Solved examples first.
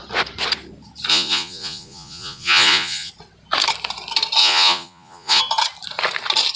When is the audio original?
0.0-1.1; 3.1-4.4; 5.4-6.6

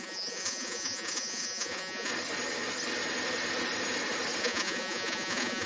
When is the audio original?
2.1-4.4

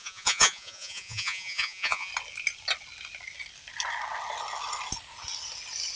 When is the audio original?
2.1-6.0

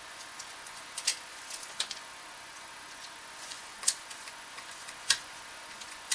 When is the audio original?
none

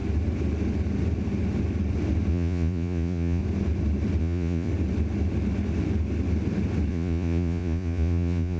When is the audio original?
0.0-2.3; 3.4-4.2; 4.7-6.9